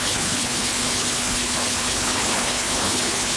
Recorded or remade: remade